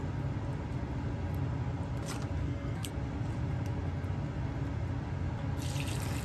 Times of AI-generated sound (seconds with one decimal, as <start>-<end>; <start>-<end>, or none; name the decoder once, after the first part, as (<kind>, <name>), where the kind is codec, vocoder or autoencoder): 2.4-2.9 (codec, SNAC)